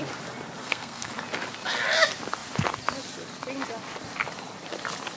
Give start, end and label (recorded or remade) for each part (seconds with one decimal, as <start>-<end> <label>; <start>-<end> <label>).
0.0-0.6 recorded; 0.6-1.1 remade; 1.1-5.2 recorded